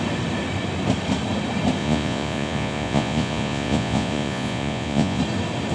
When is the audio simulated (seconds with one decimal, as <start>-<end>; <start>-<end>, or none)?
1.8-5.2